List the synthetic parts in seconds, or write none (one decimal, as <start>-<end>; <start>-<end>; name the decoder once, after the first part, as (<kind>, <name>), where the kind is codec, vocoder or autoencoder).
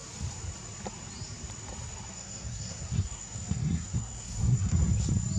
2.1-4.8 (codec, SNAC)